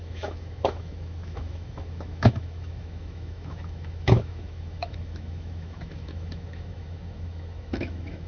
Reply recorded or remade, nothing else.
remade